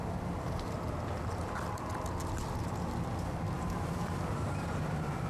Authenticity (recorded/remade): recorded